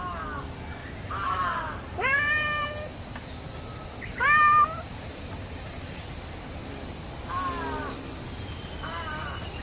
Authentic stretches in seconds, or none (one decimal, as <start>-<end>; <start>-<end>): 0.0-0.8; 1.6-4.9; 6.0-9.6